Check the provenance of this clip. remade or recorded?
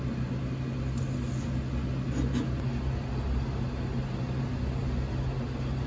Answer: recorded